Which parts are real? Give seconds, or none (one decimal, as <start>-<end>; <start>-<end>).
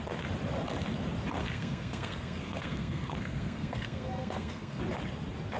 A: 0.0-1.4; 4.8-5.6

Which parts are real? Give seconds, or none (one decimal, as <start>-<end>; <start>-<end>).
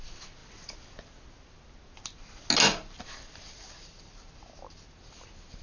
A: 0.0-5.6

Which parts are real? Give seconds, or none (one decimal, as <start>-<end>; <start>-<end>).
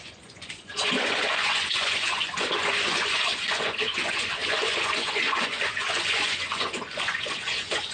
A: none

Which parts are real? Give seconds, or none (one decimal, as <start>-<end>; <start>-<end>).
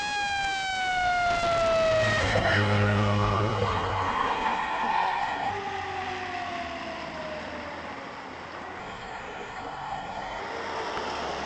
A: 0.0-2.2; 5.5-8.8; 10.4-11.5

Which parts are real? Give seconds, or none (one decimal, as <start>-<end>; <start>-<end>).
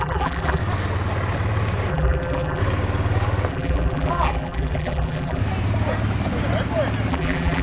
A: 0.6-1.9; 2.6-3.5; 5.4-7.1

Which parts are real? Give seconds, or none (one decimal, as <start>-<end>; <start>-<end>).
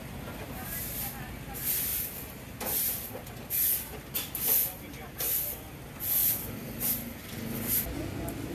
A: 0.0-6.2; 6.8-8.5